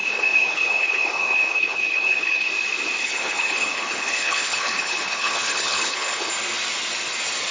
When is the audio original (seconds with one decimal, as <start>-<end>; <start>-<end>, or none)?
2.5-3.0; 6.3-7.5